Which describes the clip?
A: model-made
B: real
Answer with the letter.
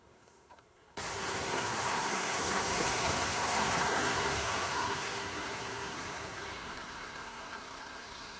A